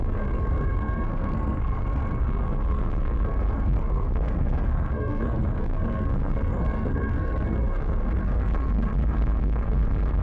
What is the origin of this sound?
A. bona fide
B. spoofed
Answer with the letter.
B